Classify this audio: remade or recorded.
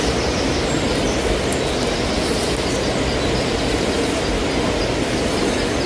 recorded